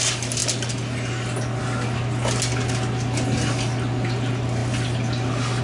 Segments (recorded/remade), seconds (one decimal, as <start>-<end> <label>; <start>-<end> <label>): 0.0-5.6 recorded